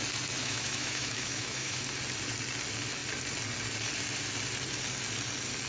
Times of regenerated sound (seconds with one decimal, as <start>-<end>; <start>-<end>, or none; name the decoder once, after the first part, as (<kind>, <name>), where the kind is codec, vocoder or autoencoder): 0.4-1.8 (autoencoder, DAC-VAE)